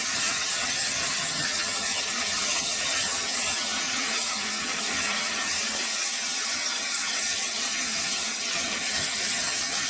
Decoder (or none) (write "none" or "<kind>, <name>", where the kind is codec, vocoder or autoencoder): vocoder, HiFi-GAN